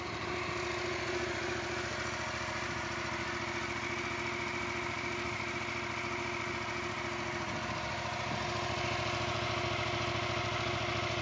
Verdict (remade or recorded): recorded